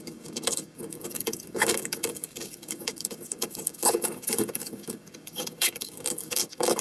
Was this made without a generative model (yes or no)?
no